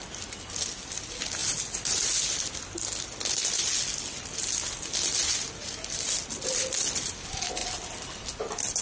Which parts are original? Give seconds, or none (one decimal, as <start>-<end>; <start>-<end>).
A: 0.0-8.8

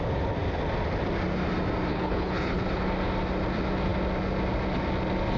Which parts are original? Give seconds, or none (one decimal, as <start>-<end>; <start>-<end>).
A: 0.0-1.9; 2.6-5.4

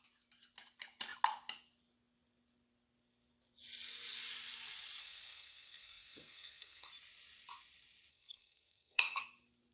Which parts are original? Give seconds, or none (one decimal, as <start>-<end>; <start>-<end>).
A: 0.0-5.0; 6.9-8.1; 9.2-9.7

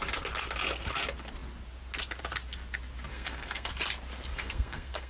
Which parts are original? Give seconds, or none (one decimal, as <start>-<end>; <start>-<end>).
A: 0.0-3.1; 3.7-4.3

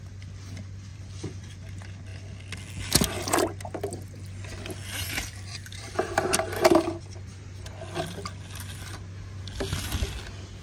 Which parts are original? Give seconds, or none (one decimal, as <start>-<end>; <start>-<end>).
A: 0.0-0.9; 1.6-4.8; 7.3-10.6

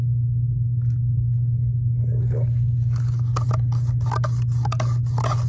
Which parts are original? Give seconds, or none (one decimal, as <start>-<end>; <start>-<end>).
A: 0.0-5.5

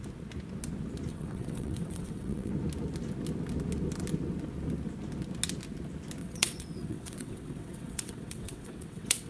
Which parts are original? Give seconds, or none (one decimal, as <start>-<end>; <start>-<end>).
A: 0.0-1.1; 2.5-6.2